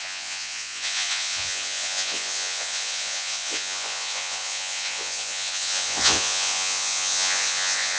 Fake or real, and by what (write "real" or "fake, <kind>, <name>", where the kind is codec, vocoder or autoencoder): fake, vocoder, Vocos